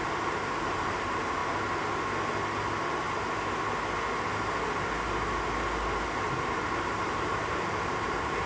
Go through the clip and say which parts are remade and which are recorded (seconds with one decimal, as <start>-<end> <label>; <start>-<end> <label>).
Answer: 0.0-1.4 remade; 1.4-6.4 recorded; 6.4-8.5 remade